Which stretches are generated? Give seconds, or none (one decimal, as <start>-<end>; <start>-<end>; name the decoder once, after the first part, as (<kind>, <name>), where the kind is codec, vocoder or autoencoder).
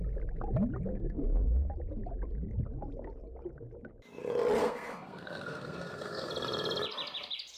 0.9-1.7 (codec, SNAC); 4.6-6.3